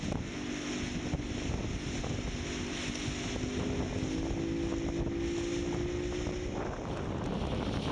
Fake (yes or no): no